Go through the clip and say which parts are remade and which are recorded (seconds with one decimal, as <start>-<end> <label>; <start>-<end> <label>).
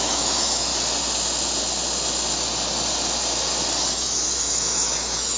0.0-0.7 remade; 0.7-3.9 recorded; 3.9-5.4 remade